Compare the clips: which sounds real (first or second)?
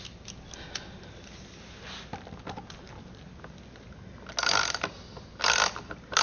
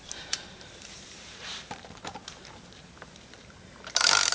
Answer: first